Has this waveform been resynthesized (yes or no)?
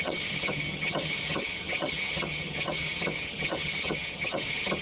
yes